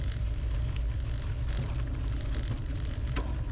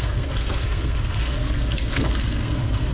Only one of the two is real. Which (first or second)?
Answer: first